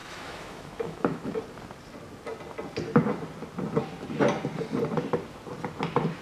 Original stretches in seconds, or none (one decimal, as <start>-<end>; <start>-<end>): 1.4-6.2